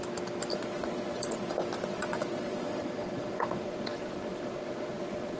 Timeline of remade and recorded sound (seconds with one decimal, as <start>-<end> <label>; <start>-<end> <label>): 0.0-0.5 recorded; 0.5-1.5 remade; 1.5-1.9 recorded; 1.9-5.4 remade